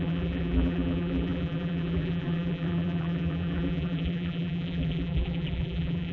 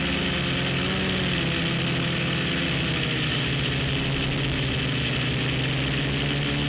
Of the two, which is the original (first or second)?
second